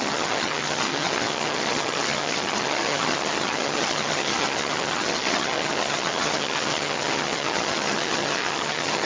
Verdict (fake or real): fake